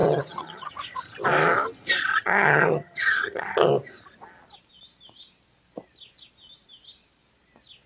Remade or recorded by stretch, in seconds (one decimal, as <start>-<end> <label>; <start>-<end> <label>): 0.0-0.7 remade; 0.7-2.1 recorded; 2.1-3.7 remade; 3.7-7.9 recorded